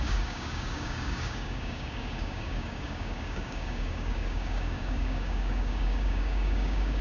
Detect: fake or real fake